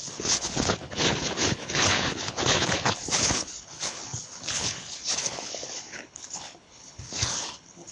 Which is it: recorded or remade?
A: remade